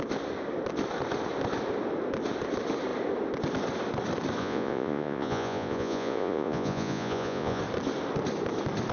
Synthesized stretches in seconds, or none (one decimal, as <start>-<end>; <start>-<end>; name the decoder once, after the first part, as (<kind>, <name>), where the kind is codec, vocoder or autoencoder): 4.4-7.6 (vocoder, Vocos)